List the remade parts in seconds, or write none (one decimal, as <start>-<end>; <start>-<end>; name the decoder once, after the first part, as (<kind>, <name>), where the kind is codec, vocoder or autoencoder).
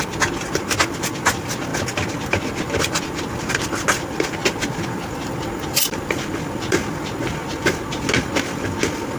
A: none